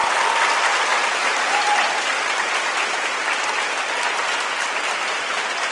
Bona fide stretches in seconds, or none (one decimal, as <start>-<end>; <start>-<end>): 0.6-5.7